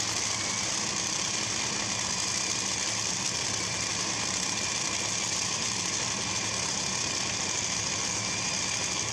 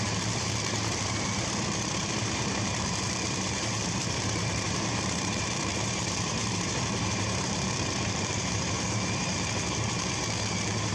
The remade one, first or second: second